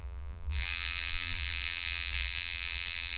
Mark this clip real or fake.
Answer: fake